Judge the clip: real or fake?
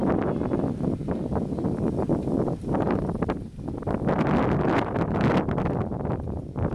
real